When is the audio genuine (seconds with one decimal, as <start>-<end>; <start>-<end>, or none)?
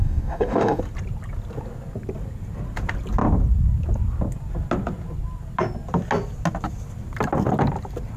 0.8-8.2